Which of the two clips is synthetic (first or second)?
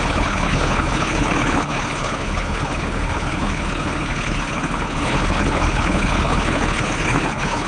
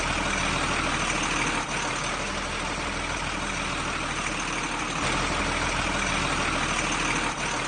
first